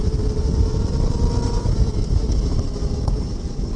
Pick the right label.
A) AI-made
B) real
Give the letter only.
A